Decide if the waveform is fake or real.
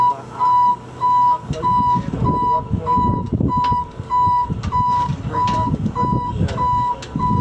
fake